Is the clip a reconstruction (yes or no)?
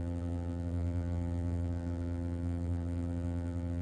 yes